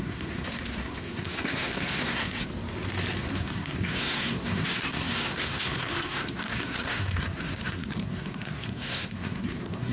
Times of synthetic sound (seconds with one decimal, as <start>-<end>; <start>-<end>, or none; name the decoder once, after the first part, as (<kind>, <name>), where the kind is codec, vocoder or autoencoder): 0.0-2.5 (codec, SNAC); 3.2-9.9